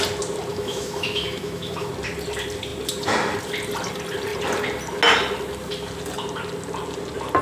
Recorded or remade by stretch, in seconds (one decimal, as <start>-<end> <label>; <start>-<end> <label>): 0.0-0.5 recorded; 0.5-1.9 remade; 1.9-7.4 recorded